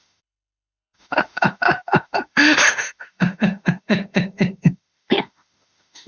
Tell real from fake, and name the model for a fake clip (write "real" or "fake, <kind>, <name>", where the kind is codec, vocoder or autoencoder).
fake, autoencoder, DAC-VAE